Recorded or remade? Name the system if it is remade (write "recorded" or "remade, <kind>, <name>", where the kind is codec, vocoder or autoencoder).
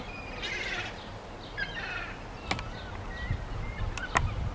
recorded